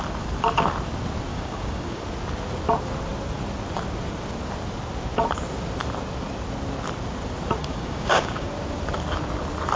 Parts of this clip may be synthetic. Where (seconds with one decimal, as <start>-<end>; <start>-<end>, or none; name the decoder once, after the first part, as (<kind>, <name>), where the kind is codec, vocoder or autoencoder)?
1.3-2.0 (codec, DAC); 7.6-8.5